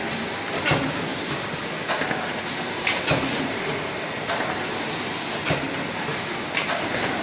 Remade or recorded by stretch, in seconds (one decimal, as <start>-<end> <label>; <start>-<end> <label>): 0.0-7.2 recorded